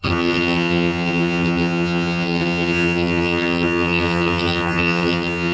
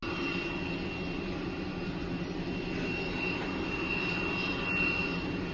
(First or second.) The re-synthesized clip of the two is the first